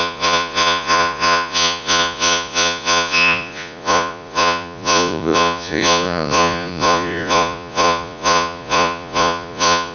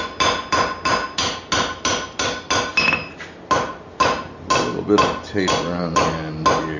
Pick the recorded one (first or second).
second